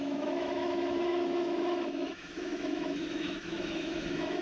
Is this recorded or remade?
remade